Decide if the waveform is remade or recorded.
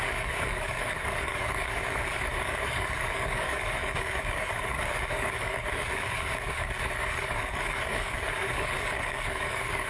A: remade